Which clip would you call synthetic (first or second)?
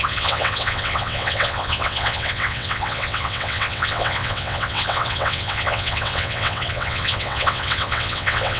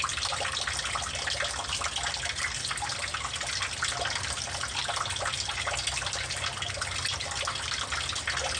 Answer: first